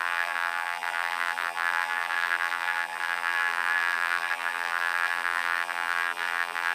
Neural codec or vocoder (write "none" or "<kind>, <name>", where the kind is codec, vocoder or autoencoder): vocoder, BigVGAN v2